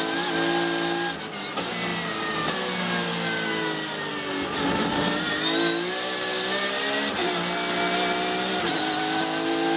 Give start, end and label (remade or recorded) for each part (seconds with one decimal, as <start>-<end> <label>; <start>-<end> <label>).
0.0-9.8 recorded